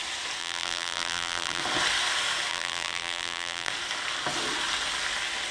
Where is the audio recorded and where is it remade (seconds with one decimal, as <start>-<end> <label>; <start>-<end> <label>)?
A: 0.0-0.4 recorded; 0.4-1.6 remade; 1.6-2.5 recorded; 2.5-3.7 remade; 3.7-5.5 recorded

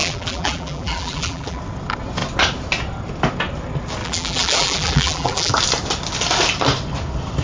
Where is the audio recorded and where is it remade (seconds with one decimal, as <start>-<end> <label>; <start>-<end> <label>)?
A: 0.0-1.6 remade; 1.6-4.0 recorded; 4.0-5.5 remade; 5.5-7.4 recorded